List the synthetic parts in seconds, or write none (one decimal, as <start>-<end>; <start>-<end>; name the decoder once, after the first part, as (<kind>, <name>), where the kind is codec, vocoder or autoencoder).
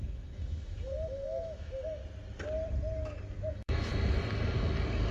0.0-2.0 (autoencoder, DAC-VAE); 3.5-3.9